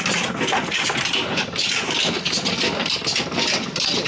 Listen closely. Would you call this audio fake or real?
real